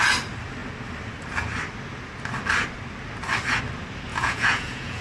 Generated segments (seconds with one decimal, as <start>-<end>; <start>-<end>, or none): 4.1-5.0